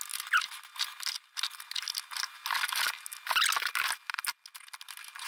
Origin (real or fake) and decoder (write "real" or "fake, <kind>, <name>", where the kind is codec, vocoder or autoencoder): real